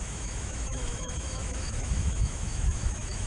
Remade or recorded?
remade